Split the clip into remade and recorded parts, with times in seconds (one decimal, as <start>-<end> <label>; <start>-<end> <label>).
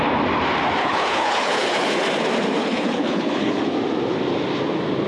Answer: 0.0-0.8 recorded; 0.8-1.9 remade; 1.9-2.6 recorded; 2.6-3.6 remade; 3.6-5.1 recorded